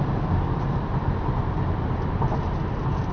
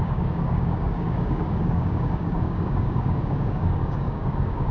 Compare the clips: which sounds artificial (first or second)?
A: second